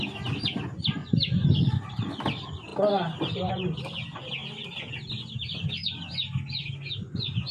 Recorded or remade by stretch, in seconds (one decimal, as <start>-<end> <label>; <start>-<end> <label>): 0.0-7.5 recorded